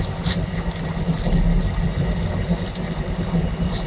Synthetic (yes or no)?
no